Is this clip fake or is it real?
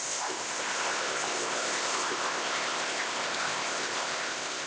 fake